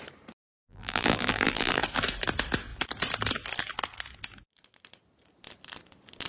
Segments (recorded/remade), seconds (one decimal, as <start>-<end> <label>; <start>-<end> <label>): 0.0-0.6 recorded; 0.6-1.8 remade; 1.8-6.3 recorded